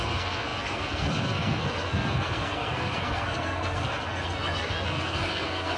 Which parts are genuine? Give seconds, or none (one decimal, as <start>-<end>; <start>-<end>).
none